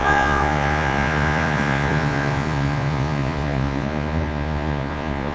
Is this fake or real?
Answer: fake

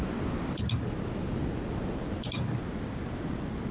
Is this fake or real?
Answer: real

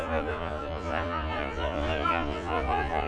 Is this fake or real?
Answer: fake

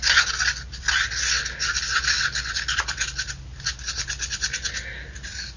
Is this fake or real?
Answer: real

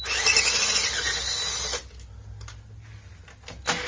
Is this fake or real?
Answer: real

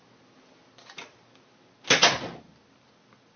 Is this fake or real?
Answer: real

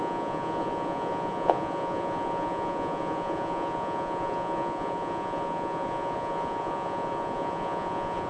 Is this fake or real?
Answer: fake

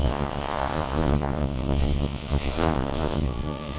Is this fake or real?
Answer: fake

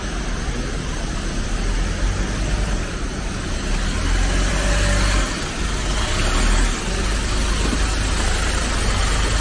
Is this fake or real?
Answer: real